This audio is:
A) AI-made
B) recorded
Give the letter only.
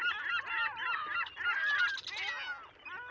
B